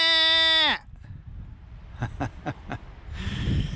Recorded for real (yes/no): yes